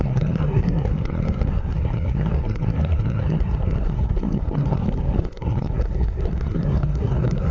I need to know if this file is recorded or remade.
remade